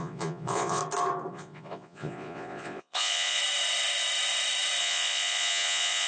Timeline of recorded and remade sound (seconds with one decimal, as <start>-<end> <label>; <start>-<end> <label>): 0.0-0.8 remade; 0.8-1.3 recorded; 1.3-3.4 remade; 3.4-4.8 recorded; 4.8-6.1 remade